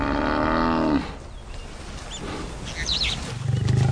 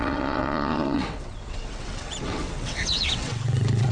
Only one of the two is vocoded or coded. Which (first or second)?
second